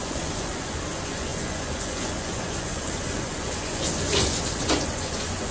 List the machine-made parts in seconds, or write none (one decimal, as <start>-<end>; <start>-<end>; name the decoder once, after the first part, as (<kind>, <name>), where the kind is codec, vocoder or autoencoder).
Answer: 0.0-5.5 (vocoder, Vocos)